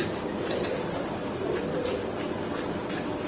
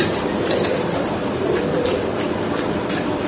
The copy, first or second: second